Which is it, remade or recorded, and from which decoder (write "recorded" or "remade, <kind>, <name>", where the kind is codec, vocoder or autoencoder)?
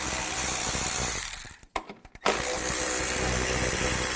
recorded